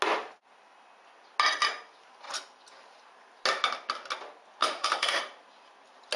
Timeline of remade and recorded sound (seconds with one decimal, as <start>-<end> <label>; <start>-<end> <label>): 0.0-4.6 recorded; 4.6-5.2 remade; 5.2-6.2 recorded